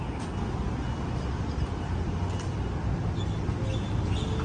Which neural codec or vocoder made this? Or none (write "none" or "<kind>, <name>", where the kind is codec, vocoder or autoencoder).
none